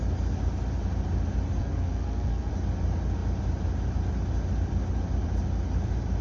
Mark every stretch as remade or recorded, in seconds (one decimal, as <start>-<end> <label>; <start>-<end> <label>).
0.0-1.6 recorded; 1.6-2.5 remade; 2.5-6.2 recorded